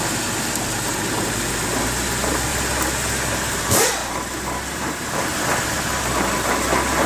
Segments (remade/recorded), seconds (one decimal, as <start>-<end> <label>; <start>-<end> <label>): 0.0-7.1 recorded